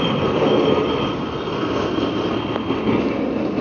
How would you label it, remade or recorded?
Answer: recorded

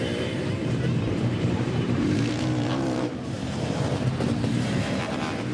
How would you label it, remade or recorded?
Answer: remade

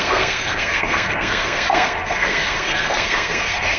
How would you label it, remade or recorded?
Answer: remade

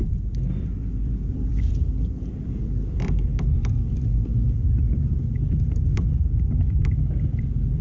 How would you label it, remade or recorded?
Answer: remade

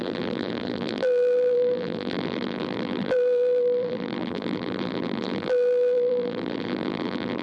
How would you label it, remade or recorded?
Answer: remade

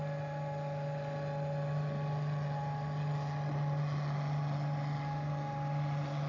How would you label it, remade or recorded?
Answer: recorded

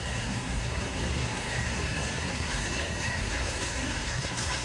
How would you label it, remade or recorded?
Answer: remade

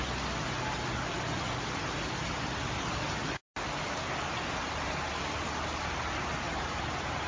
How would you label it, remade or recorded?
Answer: recorded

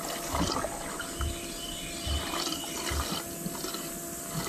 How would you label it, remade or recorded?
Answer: recorded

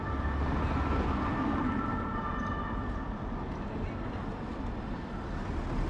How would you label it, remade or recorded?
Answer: recorded